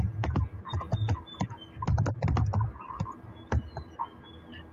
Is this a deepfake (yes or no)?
no